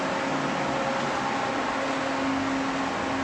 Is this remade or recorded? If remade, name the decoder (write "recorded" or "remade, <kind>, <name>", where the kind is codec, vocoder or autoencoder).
recorded